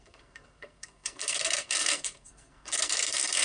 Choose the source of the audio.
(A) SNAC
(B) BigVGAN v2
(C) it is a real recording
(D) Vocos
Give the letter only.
A